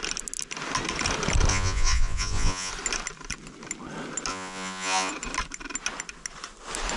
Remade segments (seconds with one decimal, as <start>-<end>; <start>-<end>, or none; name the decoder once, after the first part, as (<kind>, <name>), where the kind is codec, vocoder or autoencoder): 1.5-2.7 (vocoder, Vocos); 4.3-5.1